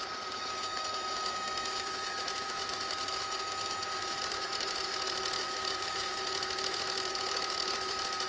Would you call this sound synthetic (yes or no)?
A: yes